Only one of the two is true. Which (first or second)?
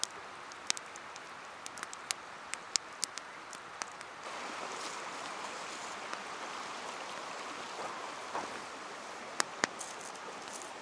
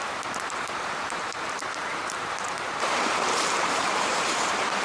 first